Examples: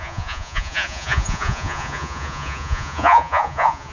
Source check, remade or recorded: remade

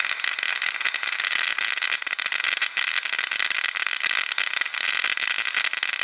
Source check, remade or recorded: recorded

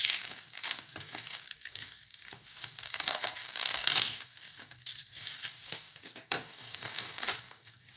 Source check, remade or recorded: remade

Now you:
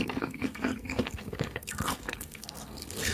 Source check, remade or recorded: remade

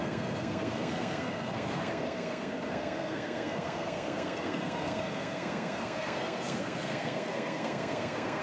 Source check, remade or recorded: remade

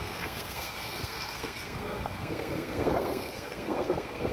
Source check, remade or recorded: remade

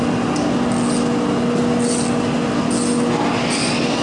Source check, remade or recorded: recorded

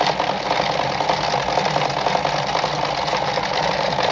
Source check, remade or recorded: recorded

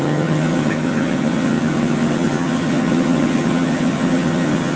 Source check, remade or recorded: remade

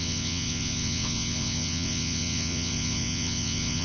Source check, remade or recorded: remade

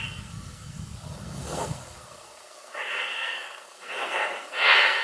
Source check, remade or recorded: remade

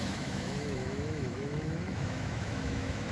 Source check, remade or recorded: remade